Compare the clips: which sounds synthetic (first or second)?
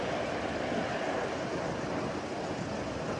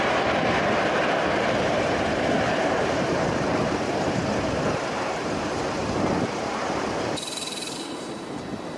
second